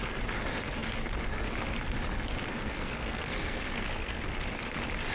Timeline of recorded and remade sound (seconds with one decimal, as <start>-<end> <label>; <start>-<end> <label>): 0.0-2.5 recorded; 2.5-4.2 remade; 4.2-5.1 recorded